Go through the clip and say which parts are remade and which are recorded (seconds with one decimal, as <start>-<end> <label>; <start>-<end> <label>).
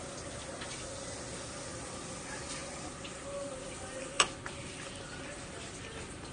0.0-6.3 recorded